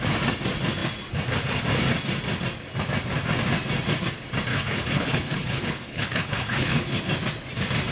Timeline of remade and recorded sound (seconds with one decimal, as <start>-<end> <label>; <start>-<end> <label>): 0.0-4.5 recorded; 4.5-7.0 remade; 7.0-7.9 recorded